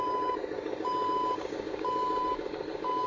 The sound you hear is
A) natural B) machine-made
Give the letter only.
B